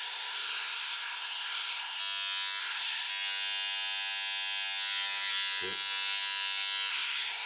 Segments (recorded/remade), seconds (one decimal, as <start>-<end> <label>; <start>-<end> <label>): 0.0-2.0 remade; 2.0-2.6 recorded; 2.6-3.1 remade; 3.1-6.9 recorded; 6.9-7.5 remade